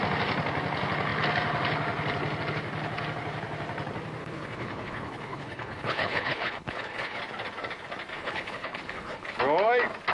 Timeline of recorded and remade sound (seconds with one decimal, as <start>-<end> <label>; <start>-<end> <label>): 0.0-4.2 recorded; 4.2-7.2 remade; 7.2-8.1 recorded; 8.1-9.4 remade; 9.4-10.1 recorded